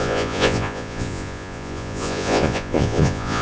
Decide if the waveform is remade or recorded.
remade